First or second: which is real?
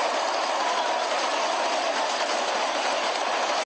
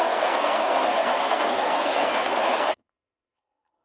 first